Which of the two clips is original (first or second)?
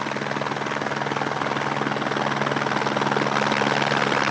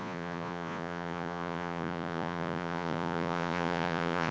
first